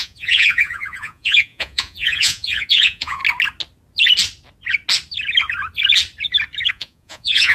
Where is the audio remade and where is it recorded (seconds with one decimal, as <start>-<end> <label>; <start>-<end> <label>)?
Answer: 0.0-3.2 remade; 3.2-6.7 recorded; 6.7-7.5 remade